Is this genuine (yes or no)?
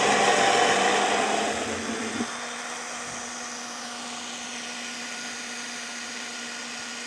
yes